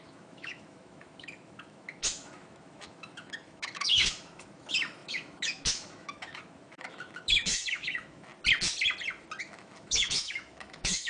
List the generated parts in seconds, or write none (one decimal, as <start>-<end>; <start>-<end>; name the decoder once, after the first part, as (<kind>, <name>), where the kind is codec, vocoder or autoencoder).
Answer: 0.0-8.3 (autoencoder, DAC-VAE); 9.4-11.1